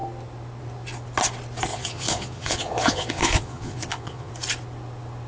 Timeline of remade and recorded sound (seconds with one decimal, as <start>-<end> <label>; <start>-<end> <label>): 0.0-1.7 recorded; 1.7-4.3 remade; 4.3-5.3 recorded